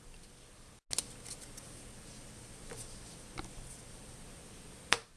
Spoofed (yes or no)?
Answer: no